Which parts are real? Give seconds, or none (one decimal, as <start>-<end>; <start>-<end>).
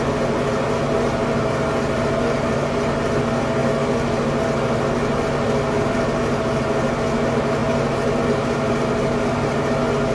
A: 0.0-10.1